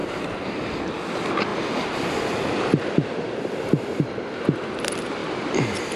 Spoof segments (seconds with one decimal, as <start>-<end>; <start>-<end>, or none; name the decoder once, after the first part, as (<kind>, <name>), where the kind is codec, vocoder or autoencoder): 0.0-0.5 (vocoder, BigVGAN v2); 1.5-4.0; 5.2-6.0